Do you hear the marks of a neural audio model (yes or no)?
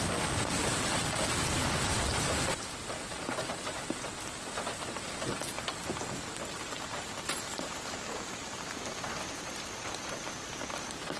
no